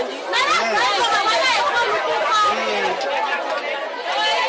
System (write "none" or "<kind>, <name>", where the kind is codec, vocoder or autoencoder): none